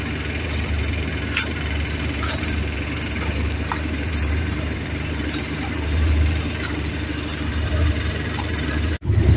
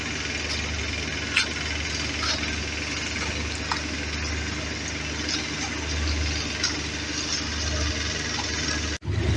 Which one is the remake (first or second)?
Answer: first